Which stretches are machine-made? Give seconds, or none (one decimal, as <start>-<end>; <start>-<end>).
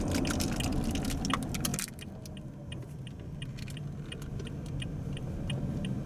none